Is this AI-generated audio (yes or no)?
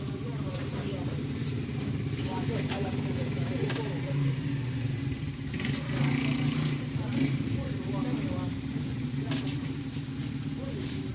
yes